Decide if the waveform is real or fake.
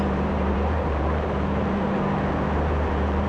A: fake